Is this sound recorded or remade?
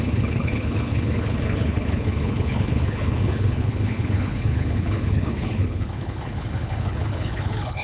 remade